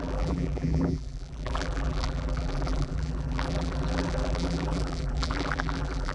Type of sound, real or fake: fake